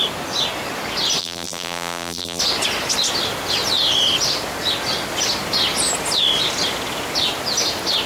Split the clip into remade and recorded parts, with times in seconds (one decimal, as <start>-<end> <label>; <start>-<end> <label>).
0.0-1.2 recorded; 1.2-2.4 remade; 2.4-8.1 recorded